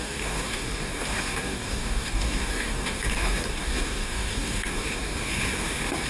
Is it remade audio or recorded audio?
remade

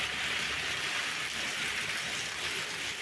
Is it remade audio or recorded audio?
recorded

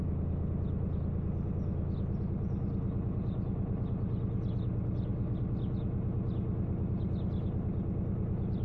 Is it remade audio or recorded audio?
recorded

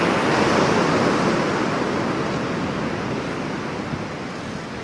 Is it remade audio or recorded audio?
recorded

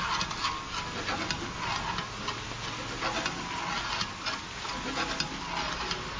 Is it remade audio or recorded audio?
recorded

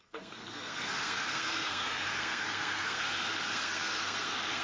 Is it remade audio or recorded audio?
remade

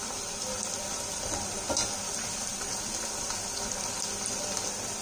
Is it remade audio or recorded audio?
recorded